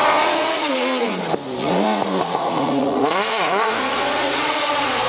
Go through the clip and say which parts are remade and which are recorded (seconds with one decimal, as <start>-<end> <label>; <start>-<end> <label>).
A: 0.0-1.2 remade; 1.2-1.6 recorded; 1.6-5.1 remade